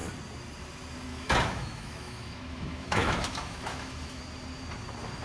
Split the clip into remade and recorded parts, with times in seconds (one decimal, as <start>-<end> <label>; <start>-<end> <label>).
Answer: 0.0-1.1 recorded; 1.1-4.2 remade; 4.2-5.2 recorded